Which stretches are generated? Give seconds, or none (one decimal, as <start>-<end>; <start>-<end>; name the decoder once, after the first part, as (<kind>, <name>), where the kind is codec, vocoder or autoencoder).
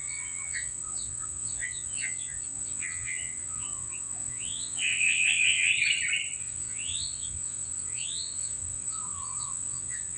0.0-5.7 (vocoder, WaveNeXt); 6.4-10.2